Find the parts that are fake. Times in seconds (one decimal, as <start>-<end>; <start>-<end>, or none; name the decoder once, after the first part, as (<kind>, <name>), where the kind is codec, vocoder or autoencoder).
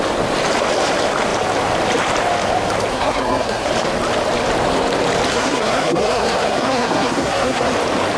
2.9-3.7 (codec, SNAC); 5.3-7.7